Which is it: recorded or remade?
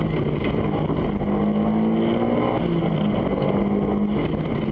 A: recorded